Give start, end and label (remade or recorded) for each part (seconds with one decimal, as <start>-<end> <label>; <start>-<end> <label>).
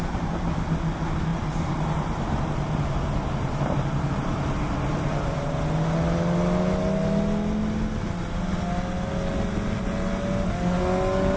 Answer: 0.0-1.3 recorded; 1.3-5.5 remade; 5.5-11.4 recorded